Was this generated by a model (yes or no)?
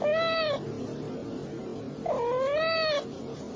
no